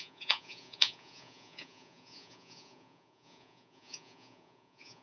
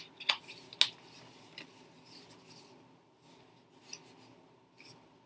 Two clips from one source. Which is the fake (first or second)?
first